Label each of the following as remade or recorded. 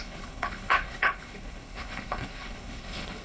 remade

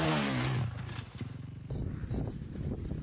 recorded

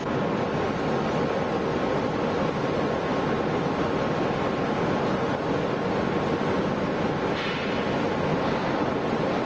recorded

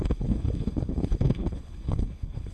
remade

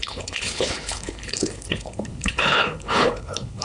remade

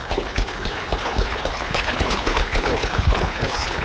remade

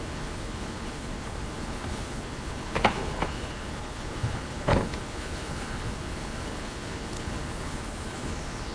remade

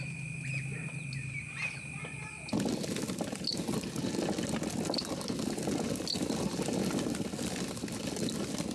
recorded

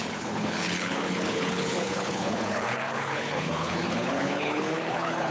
remade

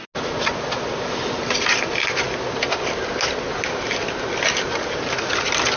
recorded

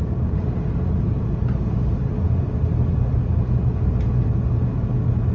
recorded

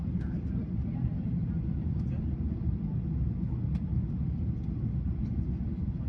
recorded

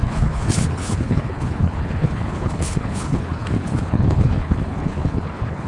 remade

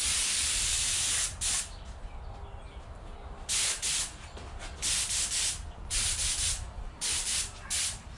recorded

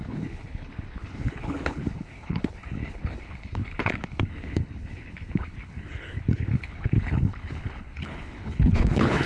remade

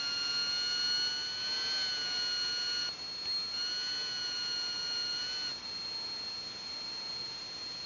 recorded